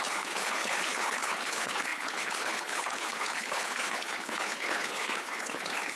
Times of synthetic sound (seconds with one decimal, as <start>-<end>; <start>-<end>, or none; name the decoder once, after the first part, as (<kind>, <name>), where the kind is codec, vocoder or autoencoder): 0.0-6.0 (codec, HILCodec)